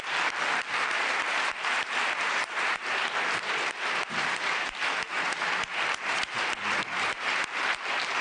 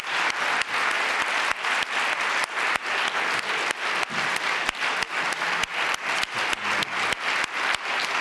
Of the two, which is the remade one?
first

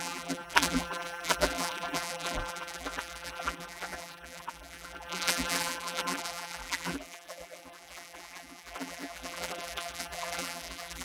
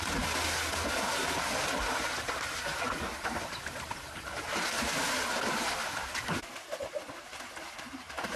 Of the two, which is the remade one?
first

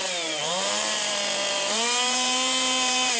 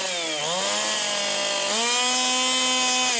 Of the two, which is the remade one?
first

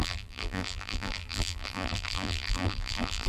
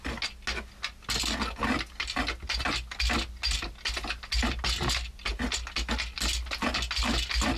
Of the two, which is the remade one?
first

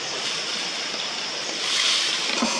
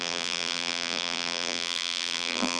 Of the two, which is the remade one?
second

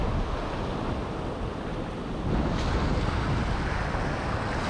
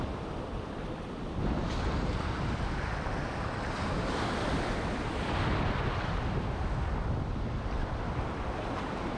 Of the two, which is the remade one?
second